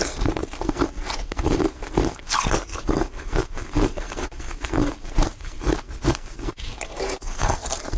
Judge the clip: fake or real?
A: fake